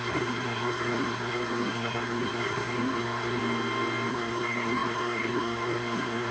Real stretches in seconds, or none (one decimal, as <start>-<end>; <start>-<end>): 3.4-4.1